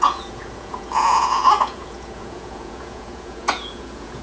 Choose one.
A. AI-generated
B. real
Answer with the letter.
A